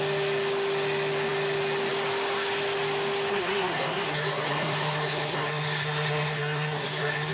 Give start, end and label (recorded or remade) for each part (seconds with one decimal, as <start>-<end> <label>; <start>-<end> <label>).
0.0-3.3 recorded; 3.3-7.3 remade